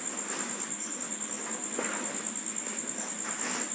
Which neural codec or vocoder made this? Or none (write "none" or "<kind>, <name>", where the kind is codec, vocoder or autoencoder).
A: none